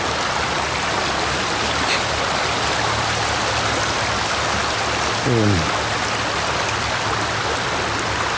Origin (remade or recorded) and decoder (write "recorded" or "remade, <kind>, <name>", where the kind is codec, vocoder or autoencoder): recorded